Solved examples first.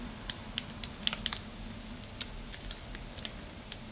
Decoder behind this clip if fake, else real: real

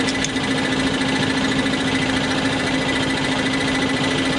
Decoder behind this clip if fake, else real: real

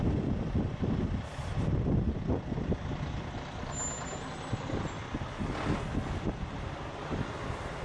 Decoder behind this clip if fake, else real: real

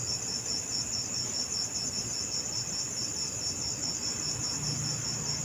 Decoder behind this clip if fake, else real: real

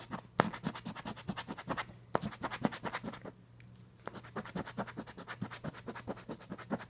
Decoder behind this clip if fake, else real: real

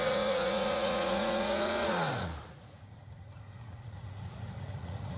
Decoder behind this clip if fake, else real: fake, vocoder, Vocos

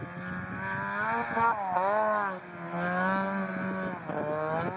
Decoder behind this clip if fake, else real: real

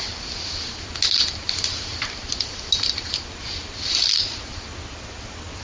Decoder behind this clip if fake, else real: real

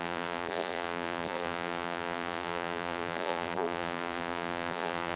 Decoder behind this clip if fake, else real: fake, vocoder, BigVGAN v2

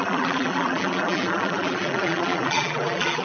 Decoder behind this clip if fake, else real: fake, vocoder, BigVGAN v2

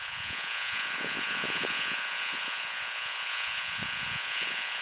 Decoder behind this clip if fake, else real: fake, vocoder, Vocos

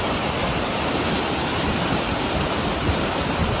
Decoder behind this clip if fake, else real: fake, vocoder, BigVGAN v2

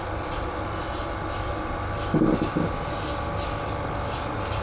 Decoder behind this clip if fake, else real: real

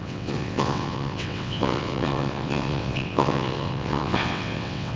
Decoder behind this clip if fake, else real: fake, vocoder, WaveNeXt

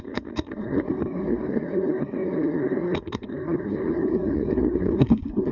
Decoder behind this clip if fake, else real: fake, codec, SNAC